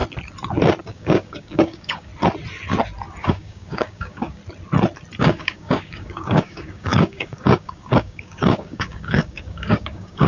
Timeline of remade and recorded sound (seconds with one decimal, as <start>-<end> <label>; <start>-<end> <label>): 0.0-0.8 recorded; 0.8-2.1 remade; 2.1-3.2 recorded; 3.2-4.4 remade; 4.4-5.2 recorded; 5.2-10.3 remade